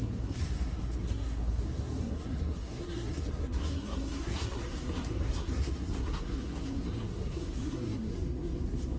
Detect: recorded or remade remade